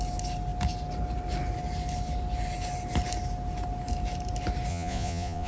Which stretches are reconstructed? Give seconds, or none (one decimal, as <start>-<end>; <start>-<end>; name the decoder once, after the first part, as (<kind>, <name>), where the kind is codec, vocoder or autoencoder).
4.7-5.5 (vocoder, Vocos)